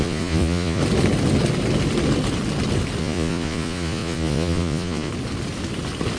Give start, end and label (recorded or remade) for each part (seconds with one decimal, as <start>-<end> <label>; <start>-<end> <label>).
0.0-0.8 remade; 0.8-3.0 recorded; 3.0-5.1 remade; 5.1-6.2 recorded